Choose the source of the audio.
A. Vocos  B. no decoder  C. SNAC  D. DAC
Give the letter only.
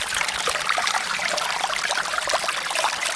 B